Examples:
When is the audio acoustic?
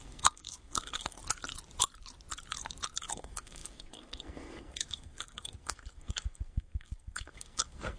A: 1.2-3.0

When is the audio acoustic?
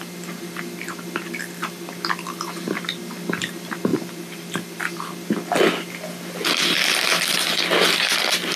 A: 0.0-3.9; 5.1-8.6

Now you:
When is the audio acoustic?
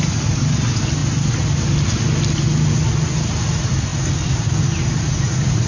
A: 0.0-5.7